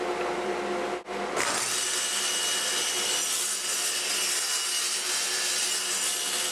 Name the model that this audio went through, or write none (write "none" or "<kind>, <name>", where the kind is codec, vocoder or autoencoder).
none